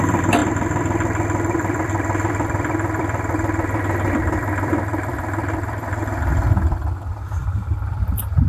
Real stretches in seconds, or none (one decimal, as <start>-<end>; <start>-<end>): none